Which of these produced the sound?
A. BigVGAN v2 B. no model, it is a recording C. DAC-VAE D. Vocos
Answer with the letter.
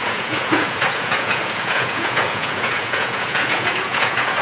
D